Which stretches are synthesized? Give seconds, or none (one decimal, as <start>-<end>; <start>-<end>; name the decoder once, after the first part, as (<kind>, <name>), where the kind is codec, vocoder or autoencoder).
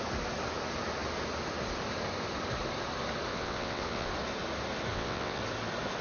3.3-4.1 (vocoder, WaveNeXt); 4.9-5.4